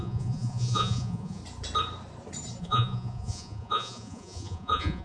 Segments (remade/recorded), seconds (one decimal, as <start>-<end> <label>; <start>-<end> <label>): 0.0-1.4 remade; 1.4-2.6 recorded; 2.6-5.0 remade